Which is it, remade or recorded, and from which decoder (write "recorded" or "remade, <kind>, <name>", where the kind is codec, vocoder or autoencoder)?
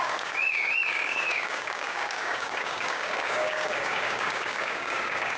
remade, codec, DAC